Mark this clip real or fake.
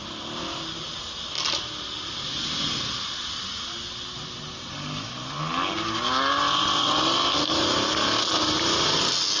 real